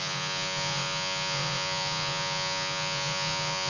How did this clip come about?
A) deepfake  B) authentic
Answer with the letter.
A